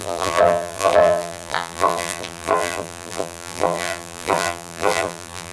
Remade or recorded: remade